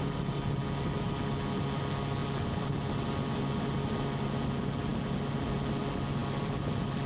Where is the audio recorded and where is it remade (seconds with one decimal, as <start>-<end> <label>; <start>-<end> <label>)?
0.0-2.2 recorded; 2.2-3.0 remade; 3.0-6.2 recorded; 6.2-7.1 remade